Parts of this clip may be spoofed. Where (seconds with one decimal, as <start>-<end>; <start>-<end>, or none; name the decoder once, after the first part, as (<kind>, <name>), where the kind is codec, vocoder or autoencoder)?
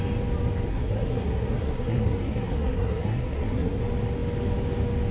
0.7-3.8 (codec, SNAC)